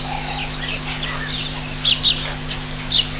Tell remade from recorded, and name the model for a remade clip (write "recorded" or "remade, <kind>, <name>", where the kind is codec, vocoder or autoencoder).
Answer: recorded